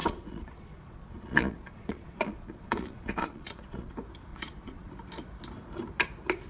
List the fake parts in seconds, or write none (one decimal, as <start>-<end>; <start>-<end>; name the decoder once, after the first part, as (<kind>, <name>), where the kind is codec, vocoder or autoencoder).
0.0-3.9 (vocoder, Vocos); 4.3-4.9

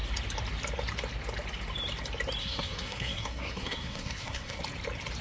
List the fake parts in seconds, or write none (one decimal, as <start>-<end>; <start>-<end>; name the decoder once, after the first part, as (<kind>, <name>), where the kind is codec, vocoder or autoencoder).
2.4-4.6 (codec, SNAC)

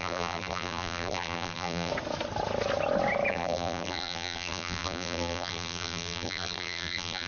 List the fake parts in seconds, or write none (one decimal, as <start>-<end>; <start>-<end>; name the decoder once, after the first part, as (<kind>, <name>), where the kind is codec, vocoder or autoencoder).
0.0-1.9 (vocoder, BigVGAN v2); 3.3-7.3

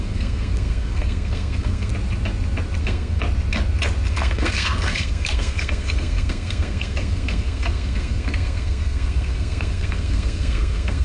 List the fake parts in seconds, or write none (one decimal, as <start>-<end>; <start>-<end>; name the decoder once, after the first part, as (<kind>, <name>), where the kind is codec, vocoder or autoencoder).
0.0-1.9 (codec, SNAC); 2.8-3.2; 4.1-11.0

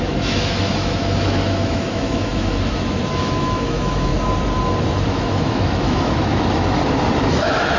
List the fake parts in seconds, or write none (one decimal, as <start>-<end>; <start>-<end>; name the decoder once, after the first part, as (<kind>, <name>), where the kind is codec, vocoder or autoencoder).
0.0-4.1 (autoencoder, DAC-VAE); 4.8-6.8; 7.3-7.8

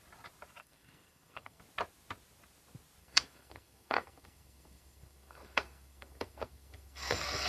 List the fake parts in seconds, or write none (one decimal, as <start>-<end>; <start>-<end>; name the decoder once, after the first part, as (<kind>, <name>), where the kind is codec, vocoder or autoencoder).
0.6-1.6 (codec, SNAC); 3.0-7.5

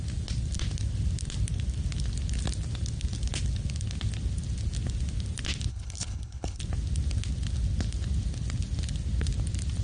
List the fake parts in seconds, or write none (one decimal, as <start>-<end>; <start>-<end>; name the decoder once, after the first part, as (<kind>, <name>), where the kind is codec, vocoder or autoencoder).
5.7-6.6 (codec, HILCodec)